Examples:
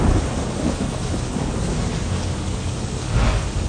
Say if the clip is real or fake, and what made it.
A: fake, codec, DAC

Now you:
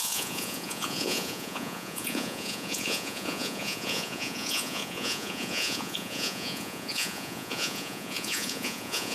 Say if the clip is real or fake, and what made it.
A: fake, vocoder, Vocos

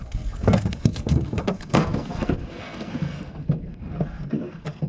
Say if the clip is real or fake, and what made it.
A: fake, codec, SNAC